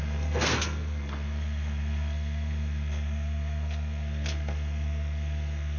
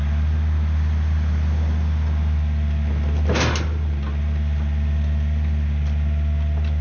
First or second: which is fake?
first